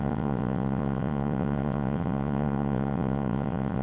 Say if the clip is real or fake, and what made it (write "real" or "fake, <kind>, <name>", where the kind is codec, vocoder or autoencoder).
fake, vocoder, WaveNeXt